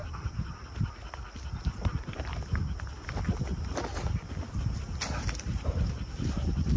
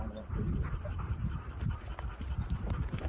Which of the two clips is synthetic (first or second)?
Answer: second